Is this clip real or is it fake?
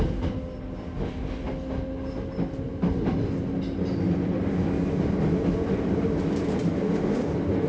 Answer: real